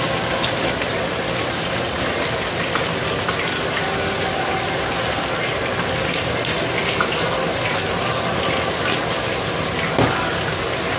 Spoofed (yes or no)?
no